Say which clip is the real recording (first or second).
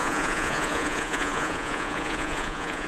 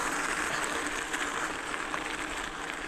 second